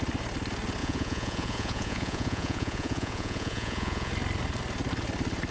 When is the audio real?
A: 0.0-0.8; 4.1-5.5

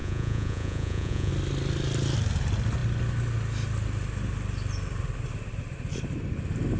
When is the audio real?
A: 1.3-6.8

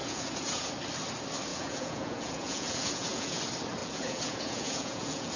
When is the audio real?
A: 0.7-1.5; 3.4-3.8

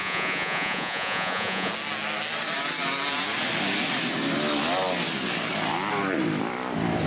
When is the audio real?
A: 1.7-7.1

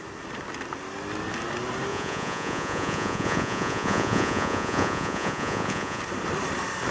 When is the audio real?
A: 0.0-1.9; 6.0-6.9